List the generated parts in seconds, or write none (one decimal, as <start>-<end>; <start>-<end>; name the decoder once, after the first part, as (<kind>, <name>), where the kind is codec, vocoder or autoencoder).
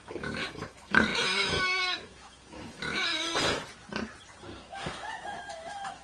0.0-3.3 (autoencoder, DAC-VAE); 4.4-6.0